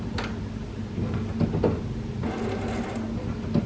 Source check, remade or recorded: recorded